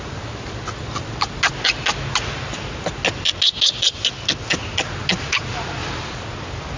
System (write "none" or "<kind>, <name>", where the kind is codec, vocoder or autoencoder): none